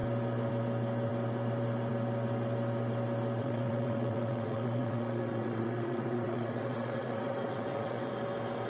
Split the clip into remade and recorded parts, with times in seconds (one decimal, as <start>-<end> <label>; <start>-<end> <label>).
0.0-3.4 recorded; 3.4-8.1 remade; 8.1-8.7 recorded